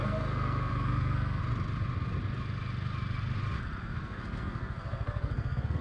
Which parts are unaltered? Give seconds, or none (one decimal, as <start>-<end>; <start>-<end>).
1.4-3.8